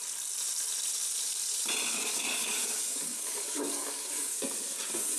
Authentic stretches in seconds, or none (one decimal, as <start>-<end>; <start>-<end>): 0.0-1.9; 4.3-5.2